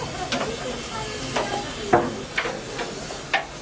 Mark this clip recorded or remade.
recorded